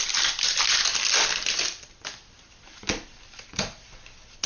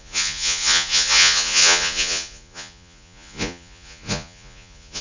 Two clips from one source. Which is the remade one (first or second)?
second